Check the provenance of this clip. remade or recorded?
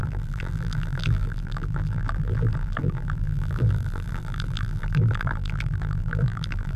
remade